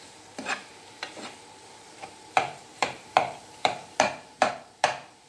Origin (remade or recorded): remade